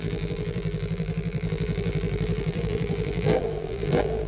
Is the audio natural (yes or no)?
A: no